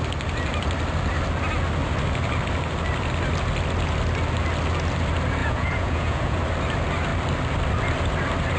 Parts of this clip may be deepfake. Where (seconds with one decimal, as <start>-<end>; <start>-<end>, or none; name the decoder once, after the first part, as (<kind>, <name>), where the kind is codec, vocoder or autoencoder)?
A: 5.4-6.4 (vocoder, Vocos)